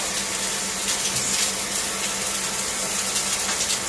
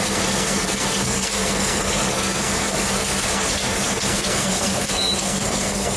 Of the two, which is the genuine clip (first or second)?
first